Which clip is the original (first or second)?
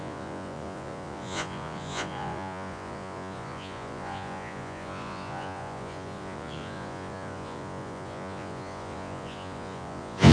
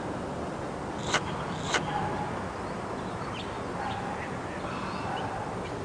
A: second